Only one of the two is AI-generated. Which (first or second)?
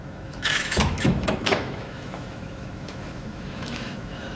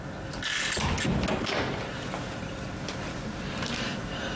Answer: first